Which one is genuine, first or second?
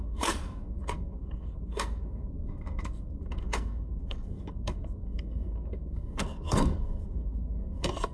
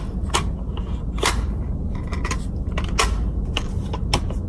second